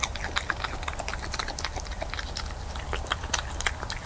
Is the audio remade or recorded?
recorded